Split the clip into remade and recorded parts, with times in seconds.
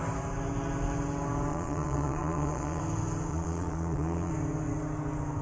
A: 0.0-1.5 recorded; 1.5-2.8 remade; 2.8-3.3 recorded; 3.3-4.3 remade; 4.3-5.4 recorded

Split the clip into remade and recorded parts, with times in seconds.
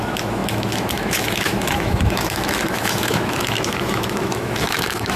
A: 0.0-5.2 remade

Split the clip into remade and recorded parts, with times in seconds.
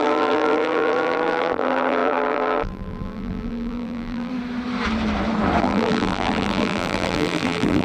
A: 0.0-4.3 remade; 4.3-5.6 recorded; 5.6-7.8 remade